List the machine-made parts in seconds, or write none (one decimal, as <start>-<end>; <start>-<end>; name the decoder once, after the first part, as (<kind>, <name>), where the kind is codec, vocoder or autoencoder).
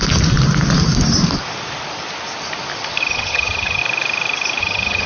3.1-3.8 (vocoder, HiFi-GAN); 4.6-5.1